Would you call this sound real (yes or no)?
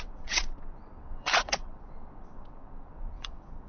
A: no